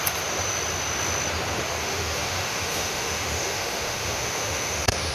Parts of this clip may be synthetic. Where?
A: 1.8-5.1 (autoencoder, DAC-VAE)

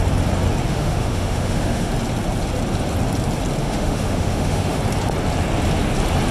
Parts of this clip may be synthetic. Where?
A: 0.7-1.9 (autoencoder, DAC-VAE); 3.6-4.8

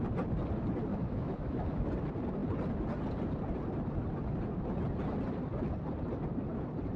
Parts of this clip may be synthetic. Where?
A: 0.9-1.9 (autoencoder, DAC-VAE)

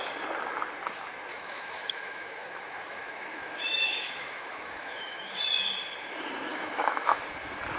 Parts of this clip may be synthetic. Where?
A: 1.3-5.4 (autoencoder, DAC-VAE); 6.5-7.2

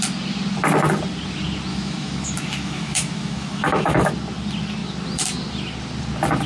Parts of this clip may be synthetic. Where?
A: 1.7-4.1 (autoencoder, DAC-VAE)